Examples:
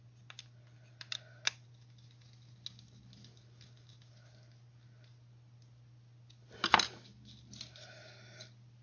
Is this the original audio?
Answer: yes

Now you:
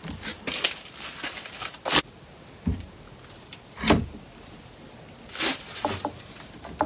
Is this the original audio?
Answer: yes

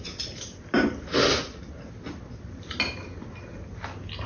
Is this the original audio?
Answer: yes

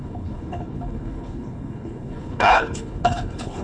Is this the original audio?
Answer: no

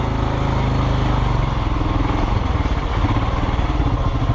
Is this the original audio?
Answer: yes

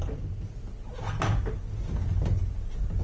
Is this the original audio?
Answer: yes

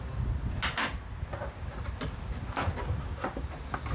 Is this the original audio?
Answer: yes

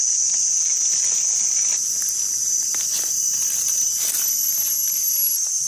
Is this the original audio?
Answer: yes